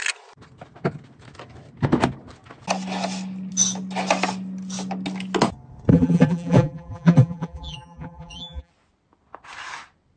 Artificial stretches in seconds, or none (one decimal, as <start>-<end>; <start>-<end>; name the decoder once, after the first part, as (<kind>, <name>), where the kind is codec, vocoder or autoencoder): 5.9-8.7 (vocoder, BigVGAN v2)